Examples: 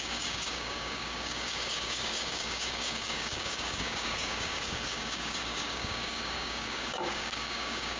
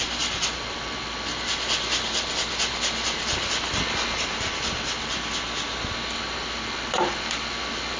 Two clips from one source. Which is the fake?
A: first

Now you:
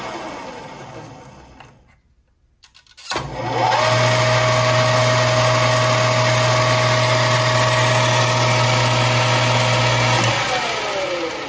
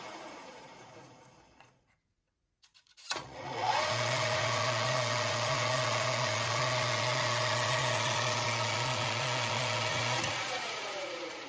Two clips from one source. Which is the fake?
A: second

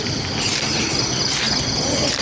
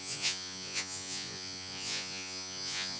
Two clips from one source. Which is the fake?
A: second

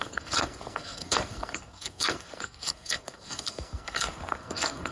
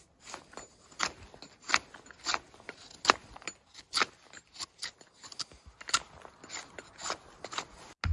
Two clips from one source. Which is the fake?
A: first